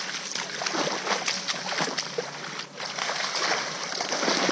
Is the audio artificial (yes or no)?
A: no